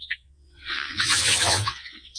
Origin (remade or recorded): remade